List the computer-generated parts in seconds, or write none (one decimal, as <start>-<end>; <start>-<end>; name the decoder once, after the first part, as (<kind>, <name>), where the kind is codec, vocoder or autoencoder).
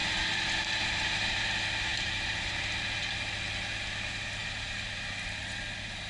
0.0-1.4 (vocoder, BigVGAN v2); 1.9-3.1; 4.4-5.3